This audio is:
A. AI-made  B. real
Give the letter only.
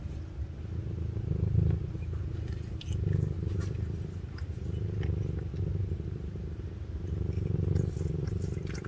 B